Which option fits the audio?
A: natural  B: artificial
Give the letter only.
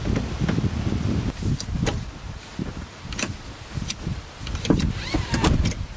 A